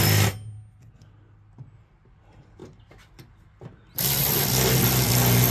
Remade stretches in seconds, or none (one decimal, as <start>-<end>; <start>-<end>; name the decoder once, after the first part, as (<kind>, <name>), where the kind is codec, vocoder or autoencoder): none